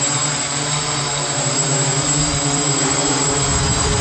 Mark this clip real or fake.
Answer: fake